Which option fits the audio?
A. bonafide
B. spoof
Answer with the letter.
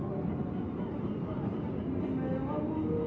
A